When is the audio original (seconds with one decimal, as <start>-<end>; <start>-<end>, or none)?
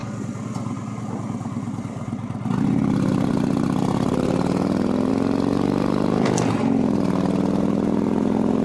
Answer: 0.0-8.6